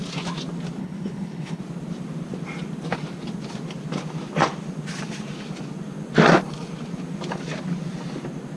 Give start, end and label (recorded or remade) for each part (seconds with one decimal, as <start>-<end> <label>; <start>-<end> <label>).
0.0-0.8 recorded; 0.8-1.6 remade; 1.6-8.6 recorded